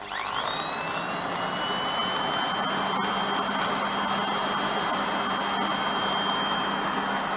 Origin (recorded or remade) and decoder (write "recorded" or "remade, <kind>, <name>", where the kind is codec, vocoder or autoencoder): recorded